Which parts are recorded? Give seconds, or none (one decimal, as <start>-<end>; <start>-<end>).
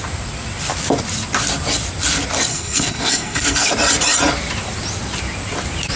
0.0-2.5; 3.7-6.0